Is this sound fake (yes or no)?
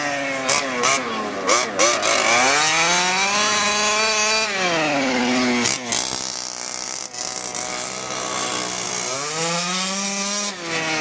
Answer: no